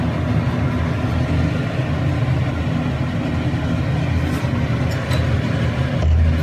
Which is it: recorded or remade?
recorded